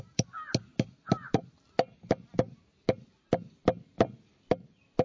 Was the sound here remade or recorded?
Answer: recorded